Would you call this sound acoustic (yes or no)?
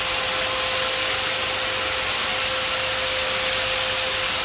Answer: yes